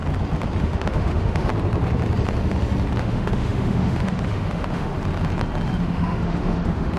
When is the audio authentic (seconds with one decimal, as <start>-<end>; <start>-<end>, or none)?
0.0-0.6; 1.5-3.0; 4.9-5.8